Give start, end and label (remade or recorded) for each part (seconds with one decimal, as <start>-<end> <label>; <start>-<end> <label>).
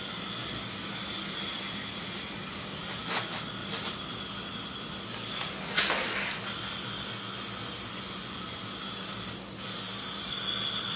0.0-7.9 recorded; 7.9-8.6 remade; 8.6-11.0 recorded